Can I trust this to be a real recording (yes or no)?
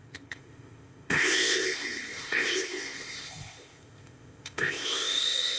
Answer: no